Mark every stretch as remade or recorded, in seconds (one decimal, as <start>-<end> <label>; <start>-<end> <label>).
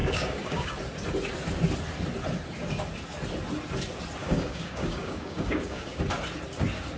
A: 0.0-0.7 remade; 0.7-4.2 recorded; 4.2-6.0 remade; 6.0-7.0 recorded